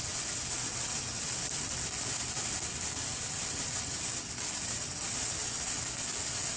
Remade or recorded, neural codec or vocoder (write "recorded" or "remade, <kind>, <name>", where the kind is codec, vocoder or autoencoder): recorded